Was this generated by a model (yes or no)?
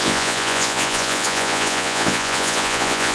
yes